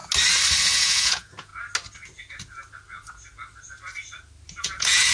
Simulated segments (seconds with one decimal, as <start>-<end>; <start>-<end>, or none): 0.6-1.5; 4.6-5.1